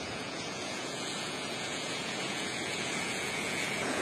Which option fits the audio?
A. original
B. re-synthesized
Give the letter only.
B